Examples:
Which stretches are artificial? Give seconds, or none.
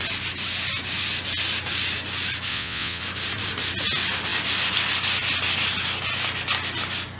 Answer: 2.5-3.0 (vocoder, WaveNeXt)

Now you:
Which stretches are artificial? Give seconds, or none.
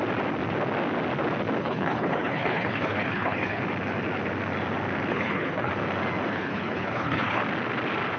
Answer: 1.6-3.6 (codec, HILCodec); 5.1-5.7; 6.3-7.4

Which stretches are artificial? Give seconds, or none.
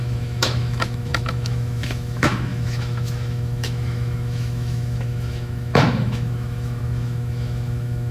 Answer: 0.0-8.1 (autoencoder, DAC-VAE)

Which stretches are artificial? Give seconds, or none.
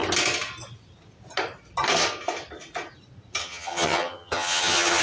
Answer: 3.4-5.0 (vocoder, HiFi-GAN)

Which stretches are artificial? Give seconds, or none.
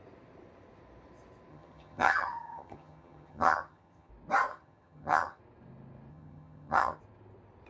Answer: 1.5-4.1 (vocoder, HiFi-GAN); 4.5-5.4; 6.1-7.0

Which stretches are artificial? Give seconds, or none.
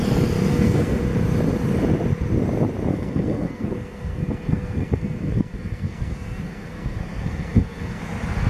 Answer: 0.5-1.0 (codec, SNAC); 2.9-8.0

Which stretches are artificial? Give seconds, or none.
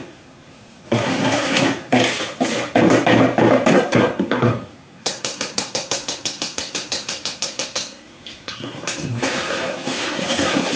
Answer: 0.0-2.0 (codec, SNAC); 3.7-10.8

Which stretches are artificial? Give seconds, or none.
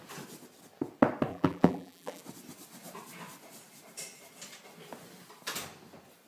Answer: 1.3-2.2 (vocoder, BigVGAN v2)